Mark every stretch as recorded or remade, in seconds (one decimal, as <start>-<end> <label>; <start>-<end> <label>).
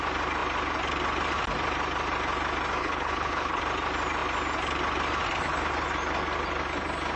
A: 0.0-2.8 recorded; 2.8-3.6 remade; 3.6-7.2 recorded